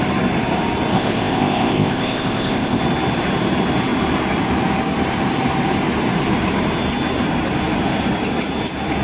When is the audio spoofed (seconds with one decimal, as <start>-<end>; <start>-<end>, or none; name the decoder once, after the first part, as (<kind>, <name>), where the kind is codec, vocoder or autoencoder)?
0.9-2.8 (codec, ZipCodec)